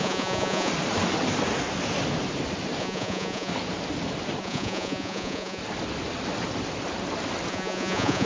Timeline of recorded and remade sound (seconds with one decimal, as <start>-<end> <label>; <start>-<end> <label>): 0.0-0.7 remade; 0.7-2.8 recorded; 2.8-3.5 remade; 3.5-4.4 recorded; 4.4-5.6 remade; 5.6-7.5 recorded; 7.5-8.3 remade